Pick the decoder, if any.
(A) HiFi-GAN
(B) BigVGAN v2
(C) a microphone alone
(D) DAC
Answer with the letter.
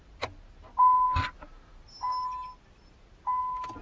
C